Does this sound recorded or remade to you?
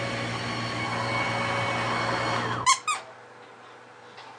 recorded